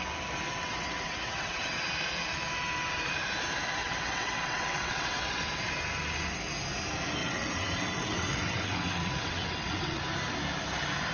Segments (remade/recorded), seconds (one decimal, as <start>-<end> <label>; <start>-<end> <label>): 0.0-0.5 recorded; 0.5-1.8 remade; 1.8-3.8 recorded; 3.8-5.6 remade; 5.6-7.2 recorded; 7.2-10.0 remade; 10.0-11.1 recorded